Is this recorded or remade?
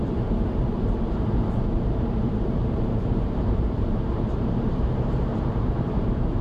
remade